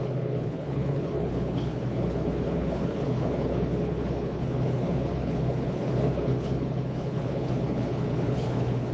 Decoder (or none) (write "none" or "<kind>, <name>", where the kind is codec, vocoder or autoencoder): codec, HILCodec